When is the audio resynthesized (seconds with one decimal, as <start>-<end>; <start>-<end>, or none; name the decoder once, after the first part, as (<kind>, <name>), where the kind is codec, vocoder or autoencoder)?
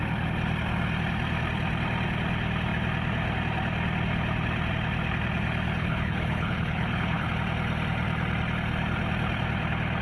5.8-7.3 (codec, HILCodec)